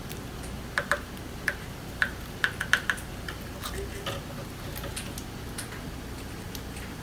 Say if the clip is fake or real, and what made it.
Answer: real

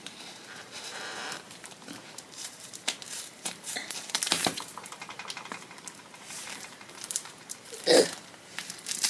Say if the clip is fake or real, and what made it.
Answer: fake, vocoder, BigVGAN v2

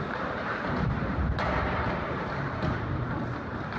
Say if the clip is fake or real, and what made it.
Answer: fake, vocoder, BigVGAN v2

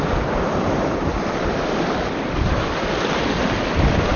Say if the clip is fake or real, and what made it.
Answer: real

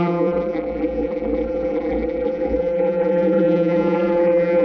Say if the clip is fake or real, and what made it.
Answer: fake, vocoder, BigVGAN v2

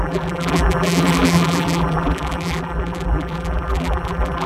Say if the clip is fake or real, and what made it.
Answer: fake, vocoder, BigVGAN v2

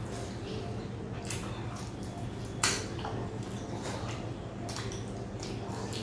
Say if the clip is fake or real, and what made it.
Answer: real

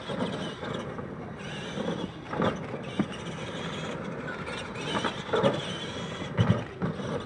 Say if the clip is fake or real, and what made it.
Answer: real